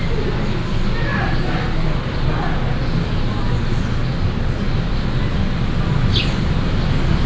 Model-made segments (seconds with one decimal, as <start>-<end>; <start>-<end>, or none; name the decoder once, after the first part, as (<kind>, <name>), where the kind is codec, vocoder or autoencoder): none